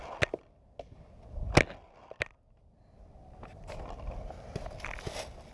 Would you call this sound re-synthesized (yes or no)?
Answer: no